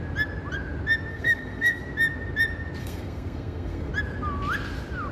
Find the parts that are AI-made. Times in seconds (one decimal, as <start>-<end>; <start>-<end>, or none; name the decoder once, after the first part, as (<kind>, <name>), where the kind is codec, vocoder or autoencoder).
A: 1.1-1.8 (codec, SNAC); 2.8-3.9